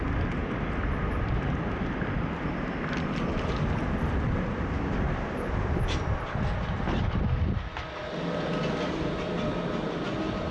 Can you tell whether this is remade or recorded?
recorded